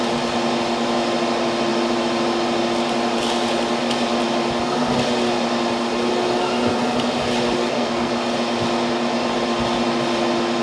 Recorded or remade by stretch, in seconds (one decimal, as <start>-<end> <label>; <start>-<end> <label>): 0.0-7.6 recorded; 7.6-8.1 remade; 8.1-10.6 recorded